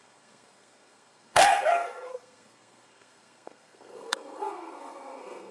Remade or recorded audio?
remade